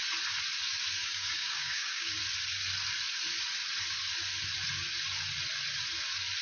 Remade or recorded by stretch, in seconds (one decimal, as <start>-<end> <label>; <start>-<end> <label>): 0.0-1.0 recorded; 1.0-2.2 remade; 2.2-6.4 recorded